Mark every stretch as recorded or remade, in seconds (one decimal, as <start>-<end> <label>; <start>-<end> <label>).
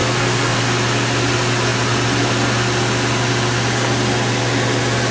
0.0-0.6 remade; 0.6-5.1 recorded